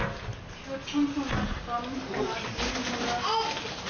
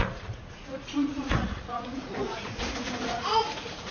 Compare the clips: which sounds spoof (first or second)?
second